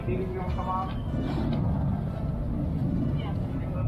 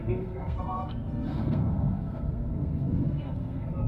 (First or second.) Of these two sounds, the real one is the first